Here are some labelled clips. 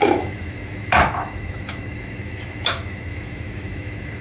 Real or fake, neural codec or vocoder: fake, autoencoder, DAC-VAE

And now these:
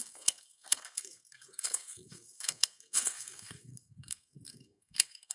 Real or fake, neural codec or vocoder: fake, codec, SNAC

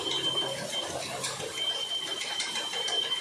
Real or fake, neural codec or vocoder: real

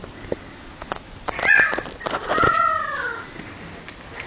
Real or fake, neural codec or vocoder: real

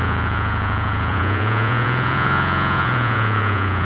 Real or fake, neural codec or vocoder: fake, vocoder, Vocos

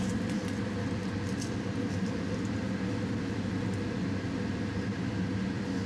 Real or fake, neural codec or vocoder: real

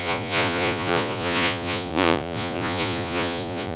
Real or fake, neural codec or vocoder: fake, vocoder, Vocos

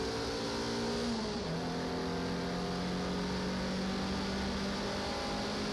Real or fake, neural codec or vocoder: real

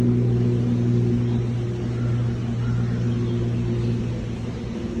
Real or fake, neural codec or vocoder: real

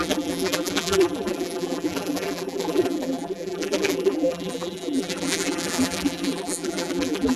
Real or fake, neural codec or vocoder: fake, vocoder, BigVGAN v2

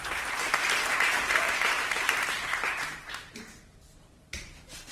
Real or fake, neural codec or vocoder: fake, vocoder, BigVGAN v2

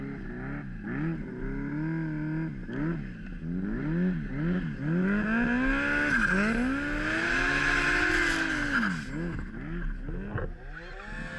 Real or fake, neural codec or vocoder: real